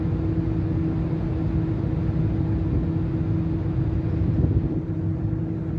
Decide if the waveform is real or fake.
real